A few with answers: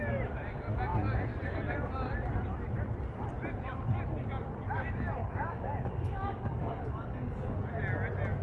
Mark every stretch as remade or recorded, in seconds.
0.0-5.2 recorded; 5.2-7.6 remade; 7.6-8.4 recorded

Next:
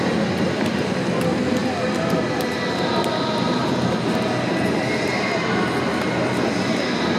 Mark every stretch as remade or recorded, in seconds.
0.0-7.2 recorded

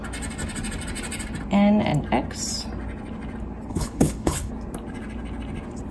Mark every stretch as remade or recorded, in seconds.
0.0-3.7 recorded; 3.7-4.5 remade; 4.5-5.9 recorded

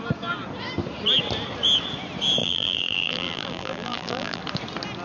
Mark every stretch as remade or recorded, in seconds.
0.0-2.4 recorded; 2.4-4.4 remade; 4.4-5.0 recorded